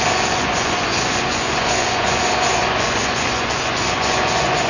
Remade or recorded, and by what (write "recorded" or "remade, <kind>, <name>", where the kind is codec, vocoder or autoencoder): remade, vocoder, Vocos